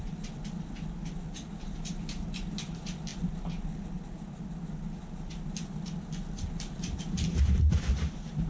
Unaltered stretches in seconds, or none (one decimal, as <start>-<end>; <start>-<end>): 0.0-8.5